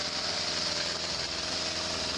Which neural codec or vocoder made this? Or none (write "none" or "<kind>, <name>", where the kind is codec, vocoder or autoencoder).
none